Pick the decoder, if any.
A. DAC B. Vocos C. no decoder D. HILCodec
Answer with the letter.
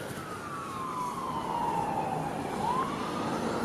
C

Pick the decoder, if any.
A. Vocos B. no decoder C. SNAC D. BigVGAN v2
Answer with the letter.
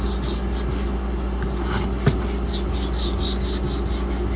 B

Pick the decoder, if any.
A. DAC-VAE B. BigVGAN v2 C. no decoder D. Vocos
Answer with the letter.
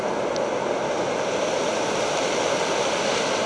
C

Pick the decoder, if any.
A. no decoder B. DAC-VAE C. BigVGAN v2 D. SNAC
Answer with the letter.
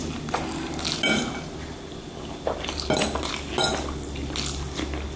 A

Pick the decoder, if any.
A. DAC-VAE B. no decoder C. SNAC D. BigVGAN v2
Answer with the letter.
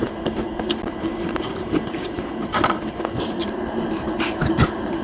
D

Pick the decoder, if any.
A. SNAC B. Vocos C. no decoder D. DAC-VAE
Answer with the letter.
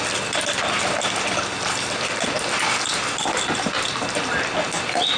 C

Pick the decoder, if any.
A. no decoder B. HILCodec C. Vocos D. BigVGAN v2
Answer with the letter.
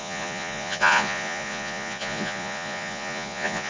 C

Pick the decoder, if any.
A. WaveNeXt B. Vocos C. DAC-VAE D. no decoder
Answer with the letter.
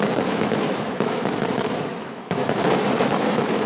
C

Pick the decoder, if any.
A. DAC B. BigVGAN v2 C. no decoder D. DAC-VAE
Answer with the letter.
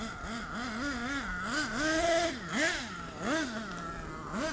C